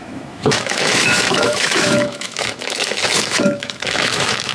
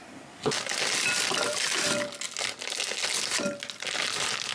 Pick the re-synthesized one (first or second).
first